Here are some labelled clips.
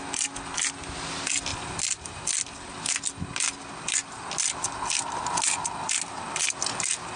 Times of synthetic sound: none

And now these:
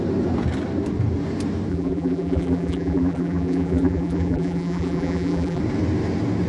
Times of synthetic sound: 1.7-5.6

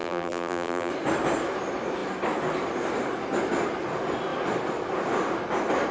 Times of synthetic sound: 0.0-0.9